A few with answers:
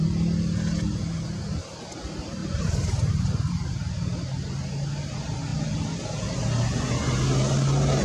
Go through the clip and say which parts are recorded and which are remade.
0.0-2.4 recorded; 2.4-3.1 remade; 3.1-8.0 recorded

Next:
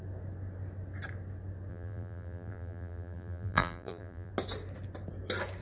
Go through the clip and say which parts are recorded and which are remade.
0.0-1.7 recorded; 1.7-4.3 remade; 4.3-5.6 recorded